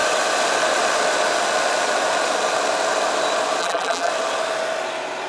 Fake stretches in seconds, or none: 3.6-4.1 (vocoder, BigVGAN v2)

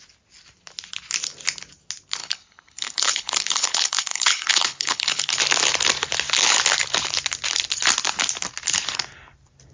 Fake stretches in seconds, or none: 2.2-5.4 (codec, HILCodec)

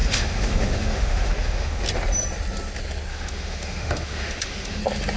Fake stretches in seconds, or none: 0.0-1.8 (autoencoder, DAC-VAE); 3.1-4.8

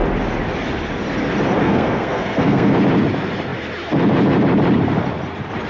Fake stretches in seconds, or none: 1.6-2.7 (codec, SNAC)